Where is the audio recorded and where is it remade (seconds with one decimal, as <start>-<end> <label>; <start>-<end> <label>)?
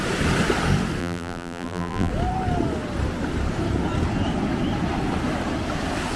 0.0-1.0 recorded; 1.0-2.1 remade; 2.1-6.2 recorded